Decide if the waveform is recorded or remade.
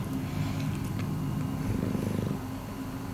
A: recorded